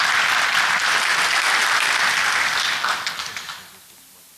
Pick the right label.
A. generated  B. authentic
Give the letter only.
B